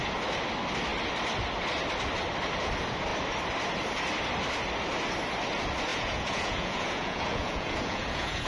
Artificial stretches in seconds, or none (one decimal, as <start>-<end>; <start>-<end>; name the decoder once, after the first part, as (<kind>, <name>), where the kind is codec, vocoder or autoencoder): 5.9-8.5 (vocoder, Vocos)